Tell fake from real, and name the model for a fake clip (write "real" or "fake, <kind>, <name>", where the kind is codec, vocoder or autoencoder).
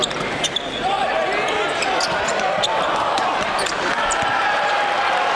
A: fake, vocoder, BigVGAN v2